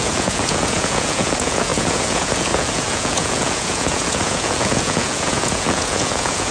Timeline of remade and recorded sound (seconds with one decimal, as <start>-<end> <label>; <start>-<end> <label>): 0.0-6.5 remade